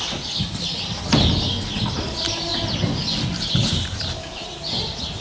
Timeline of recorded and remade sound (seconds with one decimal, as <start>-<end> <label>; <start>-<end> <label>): 0.0-5.2 recorded